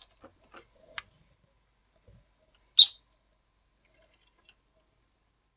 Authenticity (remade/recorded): recorded